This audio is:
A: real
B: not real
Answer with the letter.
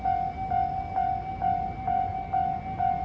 A